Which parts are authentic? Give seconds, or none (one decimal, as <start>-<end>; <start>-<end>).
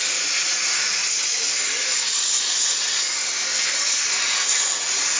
1.0-3.6